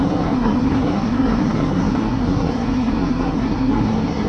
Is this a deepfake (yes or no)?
yes